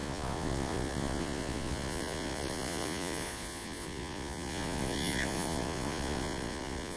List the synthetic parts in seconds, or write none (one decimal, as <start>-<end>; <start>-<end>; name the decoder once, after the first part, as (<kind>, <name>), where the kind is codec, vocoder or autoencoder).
0.0-7.0 (vocoder, Vocos)